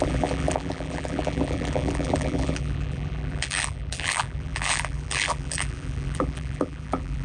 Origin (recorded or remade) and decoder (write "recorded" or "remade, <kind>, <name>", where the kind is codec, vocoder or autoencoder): remade, vocoder, BigVGAN v2